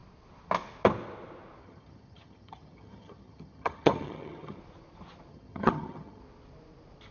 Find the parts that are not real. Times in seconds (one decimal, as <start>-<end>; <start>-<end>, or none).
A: 1.6-4.6; 5.3-6.2